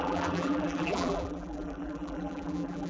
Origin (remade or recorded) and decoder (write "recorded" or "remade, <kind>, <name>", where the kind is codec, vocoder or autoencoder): remade, vocoder, BigVGAN v2